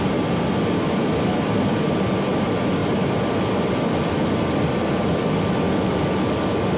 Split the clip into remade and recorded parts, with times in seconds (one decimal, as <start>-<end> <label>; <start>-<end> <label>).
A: 0.0-2.8 recorded; 2.8-3.6 remade; 3.6-6.8 recorded